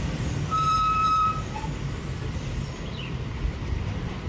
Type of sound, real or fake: fake